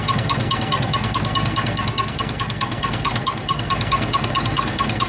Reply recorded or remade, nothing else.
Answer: remade